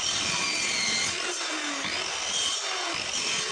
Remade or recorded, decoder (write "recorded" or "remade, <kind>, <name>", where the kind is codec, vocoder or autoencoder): recorded